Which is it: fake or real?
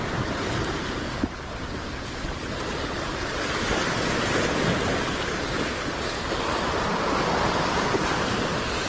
real